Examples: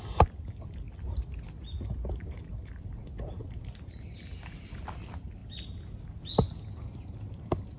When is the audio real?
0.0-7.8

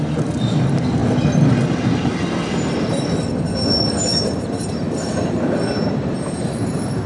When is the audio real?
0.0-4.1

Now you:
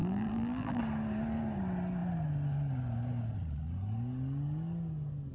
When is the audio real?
0.8-5.3

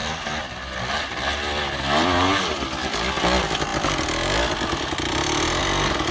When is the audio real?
0.8-3.7; 5.6-6.1

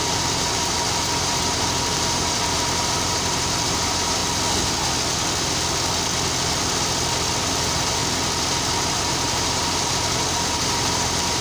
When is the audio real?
4.2-7.4; 8.0-8.9

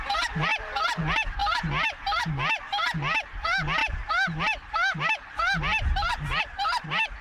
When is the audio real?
0.0-7.2

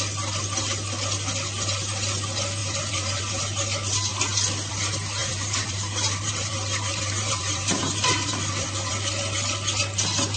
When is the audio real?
0.0-2.6; 3.4-5.2; 8.9-10.4

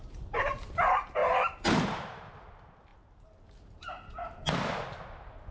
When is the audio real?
0.0-1.2; 2.3-5.5